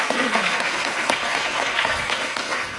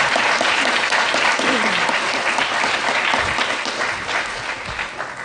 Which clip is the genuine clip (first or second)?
second